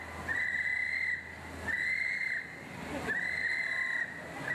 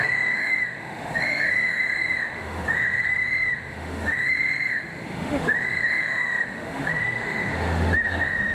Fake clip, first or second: second